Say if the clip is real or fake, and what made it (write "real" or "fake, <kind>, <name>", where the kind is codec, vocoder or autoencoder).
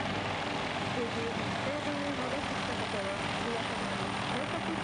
real